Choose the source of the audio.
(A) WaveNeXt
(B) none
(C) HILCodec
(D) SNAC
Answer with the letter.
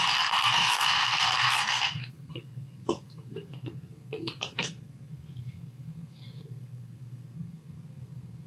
D